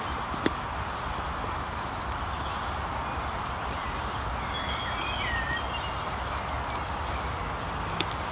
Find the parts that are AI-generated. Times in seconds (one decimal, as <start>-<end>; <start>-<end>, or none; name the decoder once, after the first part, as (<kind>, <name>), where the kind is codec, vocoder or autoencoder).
none